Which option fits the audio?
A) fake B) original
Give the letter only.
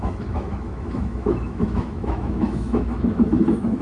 A